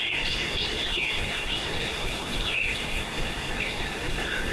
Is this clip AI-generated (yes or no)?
yes